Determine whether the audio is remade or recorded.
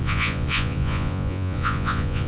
remade